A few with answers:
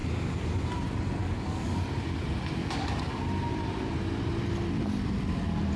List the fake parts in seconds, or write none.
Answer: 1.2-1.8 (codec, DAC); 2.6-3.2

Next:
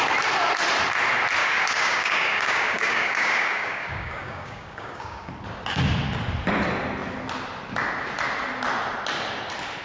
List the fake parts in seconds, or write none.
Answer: 1.4-5.3 (codec, DAC)

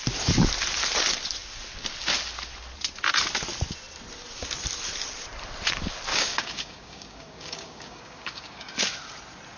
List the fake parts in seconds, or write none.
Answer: 6.1-8.8 (codec, DAC)

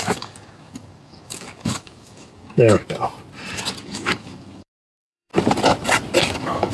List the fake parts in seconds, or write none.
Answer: 0.0-2.8 (codec, DAC); 3.8-5.3; 6.2-6.7